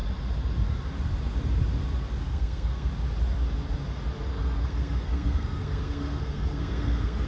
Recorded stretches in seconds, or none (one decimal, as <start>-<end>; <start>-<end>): 0.0-2.2; 2.9-4.3